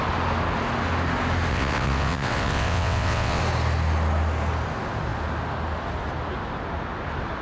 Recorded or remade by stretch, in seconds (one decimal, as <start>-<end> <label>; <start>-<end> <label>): 0.0-1.5 recorded; 1.5-3.4 remade; 3.4-7.4 recorded